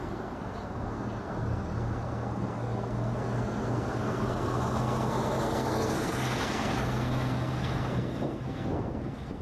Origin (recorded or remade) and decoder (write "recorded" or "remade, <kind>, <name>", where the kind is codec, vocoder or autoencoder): remade, codec, SNAC